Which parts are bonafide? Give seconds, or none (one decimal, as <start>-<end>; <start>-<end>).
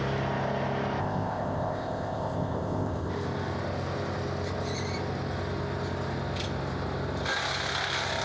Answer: 0.0-1.0; 3.1-8.2